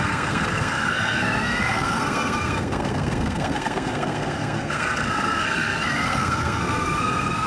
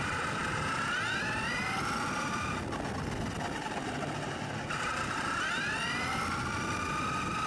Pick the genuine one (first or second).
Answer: second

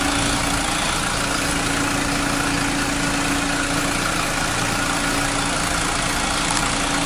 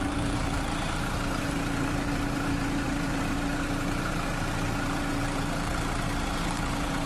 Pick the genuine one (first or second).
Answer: first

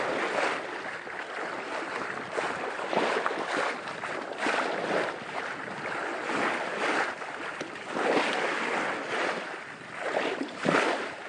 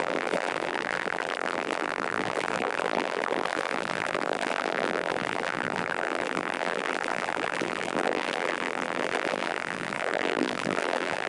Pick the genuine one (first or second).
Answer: first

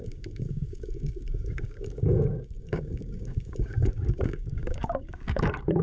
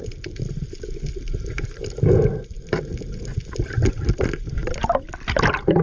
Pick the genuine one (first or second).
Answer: second